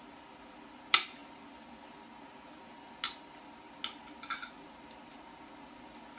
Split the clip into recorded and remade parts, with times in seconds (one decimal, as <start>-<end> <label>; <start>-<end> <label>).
0.0-1.2 recorded; 1.2-2.0 remade; 2.0-6.2 recorded